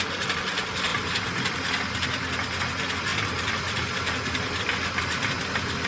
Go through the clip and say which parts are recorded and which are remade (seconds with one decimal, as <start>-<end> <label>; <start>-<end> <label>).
0.0-5.9 recorded